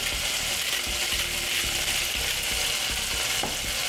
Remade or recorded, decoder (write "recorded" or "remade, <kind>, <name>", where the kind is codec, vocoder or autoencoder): recorded